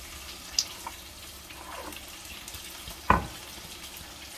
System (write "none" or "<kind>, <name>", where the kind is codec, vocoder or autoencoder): none